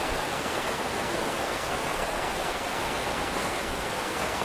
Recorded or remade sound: remade